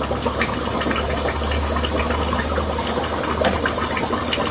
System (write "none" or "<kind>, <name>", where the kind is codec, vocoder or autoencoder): none